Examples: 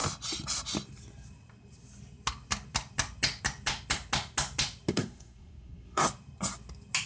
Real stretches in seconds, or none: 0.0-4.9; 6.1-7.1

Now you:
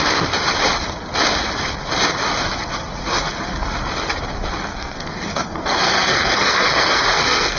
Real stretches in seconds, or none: 0.0-4.7